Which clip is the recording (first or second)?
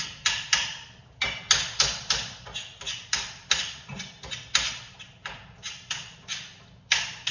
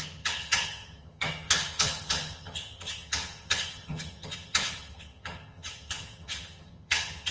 first